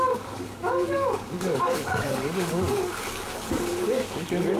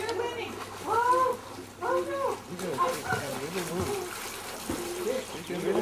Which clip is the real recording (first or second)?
second